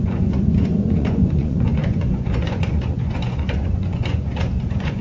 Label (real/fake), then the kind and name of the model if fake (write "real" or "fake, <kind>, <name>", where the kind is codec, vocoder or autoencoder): fake, vocoder, Vocos